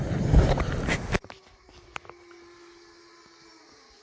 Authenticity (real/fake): real